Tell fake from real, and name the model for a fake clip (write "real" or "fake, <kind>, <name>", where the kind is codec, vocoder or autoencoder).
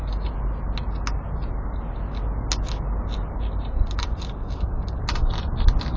real